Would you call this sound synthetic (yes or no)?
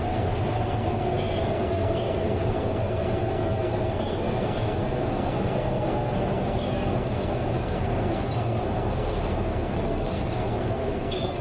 yes